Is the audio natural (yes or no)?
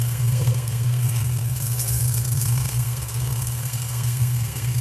no